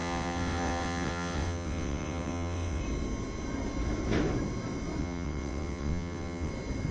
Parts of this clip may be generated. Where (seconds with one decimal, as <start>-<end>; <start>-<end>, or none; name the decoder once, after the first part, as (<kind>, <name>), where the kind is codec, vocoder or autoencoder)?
0.0-2.8 (vocoder, WaveNeXt); 5.0-6.5